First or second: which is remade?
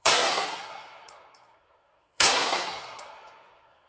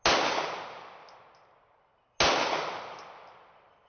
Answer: first